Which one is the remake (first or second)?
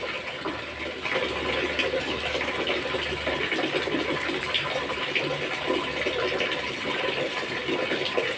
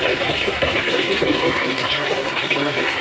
second